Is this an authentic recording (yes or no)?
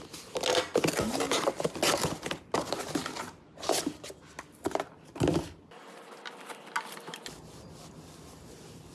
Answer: yes